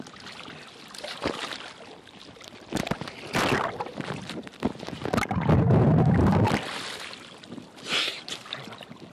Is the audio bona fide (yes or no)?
yes